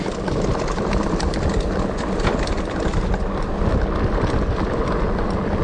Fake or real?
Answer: real